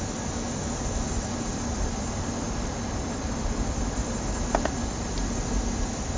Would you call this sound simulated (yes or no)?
no